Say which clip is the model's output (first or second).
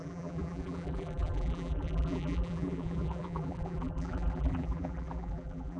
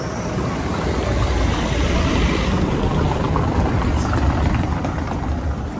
first